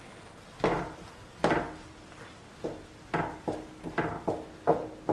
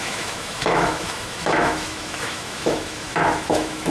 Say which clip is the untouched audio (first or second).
first